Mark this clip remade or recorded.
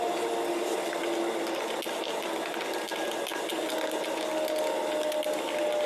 recorded